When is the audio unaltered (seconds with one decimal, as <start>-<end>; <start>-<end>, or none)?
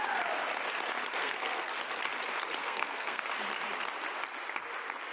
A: 0.0-1.2; 1.7-2.6; 3.2-5.1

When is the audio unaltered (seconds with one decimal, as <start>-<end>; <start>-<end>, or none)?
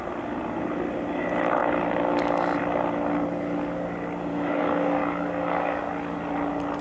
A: 0.0-4.3; 5.8-6.8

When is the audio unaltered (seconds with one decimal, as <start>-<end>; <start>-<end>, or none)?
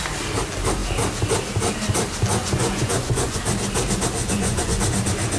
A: 0.0-2.4; 3.4-4.2; 4.8-5.4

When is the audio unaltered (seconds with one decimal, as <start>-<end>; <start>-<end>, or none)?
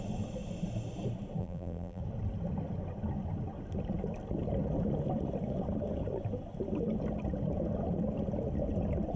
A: 0.0-1.4; 2.0-9.2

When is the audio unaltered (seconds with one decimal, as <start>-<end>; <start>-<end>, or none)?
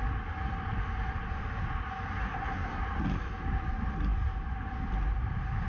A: 0.0-2.2; 2.8-5.7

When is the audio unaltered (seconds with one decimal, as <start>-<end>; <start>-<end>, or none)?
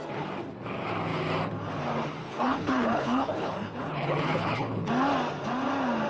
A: 0.0-2.2; 4.9-6.1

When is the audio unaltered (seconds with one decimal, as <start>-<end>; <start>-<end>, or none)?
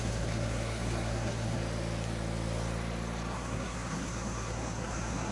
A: 1.6-3.3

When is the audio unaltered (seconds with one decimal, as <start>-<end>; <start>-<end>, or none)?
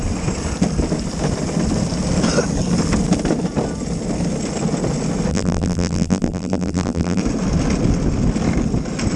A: 0.0-5.3; 7.2-9.2